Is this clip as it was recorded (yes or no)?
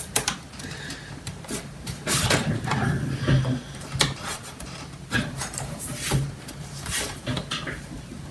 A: no